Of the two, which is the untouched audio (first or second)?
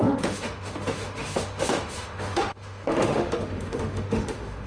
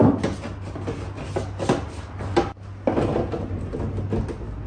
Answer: second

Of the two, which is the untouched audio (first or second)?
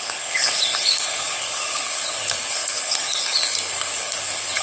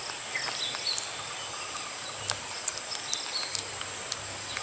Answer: second